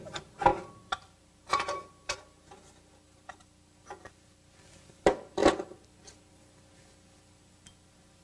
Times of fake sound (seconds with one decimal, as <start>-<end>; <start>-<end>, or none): none